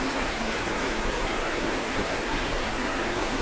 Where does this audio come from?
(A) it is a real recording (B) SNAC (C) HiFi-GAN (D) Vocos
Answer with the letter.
B